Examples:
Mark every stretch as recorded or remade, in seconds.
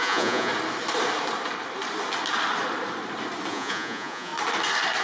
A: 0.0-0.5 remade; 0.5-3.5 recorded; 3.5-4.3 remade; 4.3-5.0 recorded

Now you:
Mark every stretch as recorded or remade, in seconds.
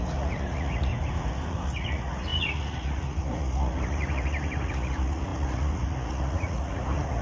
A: 0.0-0.9 remade; 0.9-1.5 recorded; 1.5-7.2 remade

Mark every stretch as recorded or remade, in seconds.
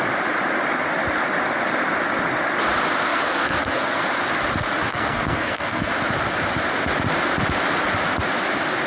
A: 0.0-3.1 recorded; 3.1-4.0 remade; 4.0-4.9 recorded; 4.9-5.9 remade; 5.9-8.9 recorded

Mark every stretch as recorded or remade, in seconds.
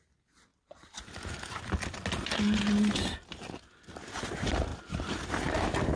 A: 0.0-6.0 recorded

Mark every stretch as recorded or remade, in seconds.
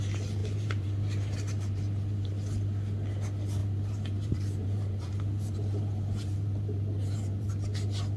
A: 0.0-0.4 recorded; 0.4-2.3 remade; 2.3-3.6 recorded; 3.6-7.5 remade; 7.5-8.2 recorded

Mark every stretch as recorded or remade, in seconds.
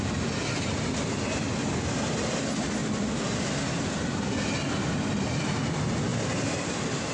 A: 0.0-7.1 recorded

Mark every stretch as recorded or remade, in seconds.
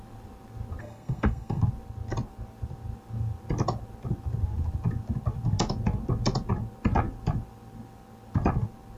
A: 0.0-0.8 recorded; 0.8-1.6 remade; 1.6-9.0 recorded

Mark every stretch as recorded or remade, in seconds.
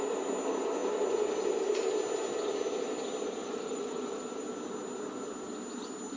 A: 0.0-3.4 recorded; 3.4-4.2 remade; 4.2-6.2 recorded